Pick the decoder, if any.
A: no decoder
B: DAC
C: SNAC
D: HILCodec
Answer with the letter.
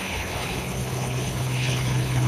D